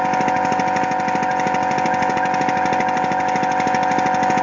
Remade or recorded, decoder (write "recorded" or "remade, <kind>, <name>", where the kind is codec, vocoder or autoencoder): recorded